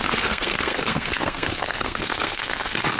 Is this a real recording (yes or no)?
no